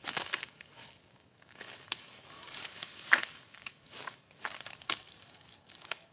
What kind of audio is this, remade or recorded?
remade